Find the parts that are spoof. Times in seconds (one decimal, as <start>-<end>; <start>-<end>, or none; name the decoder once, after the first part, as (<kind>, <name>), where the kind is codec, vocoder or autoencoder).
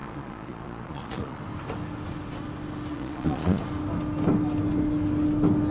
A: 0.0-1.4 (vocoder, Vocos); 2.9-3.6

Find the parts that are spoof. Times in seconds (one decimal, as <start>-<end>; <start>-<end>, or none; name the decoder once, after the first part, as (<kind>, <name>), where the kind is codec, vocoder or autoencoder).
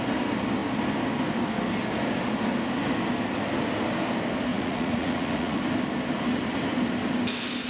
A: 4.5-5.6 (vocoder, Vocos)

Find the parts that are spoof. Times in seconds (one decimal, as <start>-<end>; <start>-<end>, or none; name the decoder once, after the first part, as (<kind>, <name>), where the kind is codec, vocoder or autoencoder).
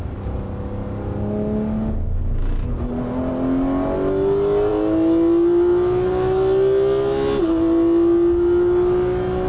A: none